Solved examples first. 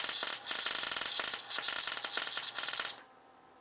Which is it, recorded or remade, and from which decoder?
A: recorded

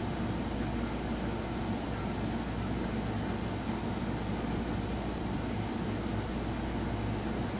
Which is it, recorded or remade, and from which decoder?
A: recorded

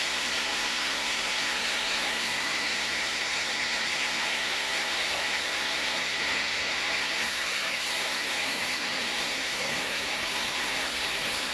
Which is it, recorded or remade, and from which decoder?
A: remade, codec, SNAC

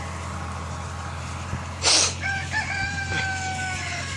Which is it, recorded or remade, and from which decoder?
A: recorded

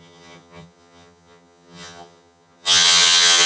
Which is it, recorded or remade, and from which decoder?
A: remade, vocoder, HiFi-GAN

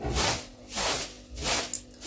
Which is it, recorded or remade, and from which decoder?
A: recorded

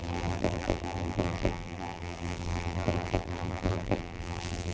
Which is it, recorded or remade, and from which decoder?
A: remade, vocoder, BigVGAN v2